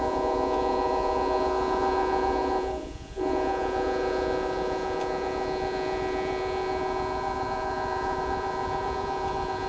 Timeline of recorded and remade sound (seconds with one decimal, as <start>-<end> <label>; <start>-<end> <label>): 0.0-9.7 remade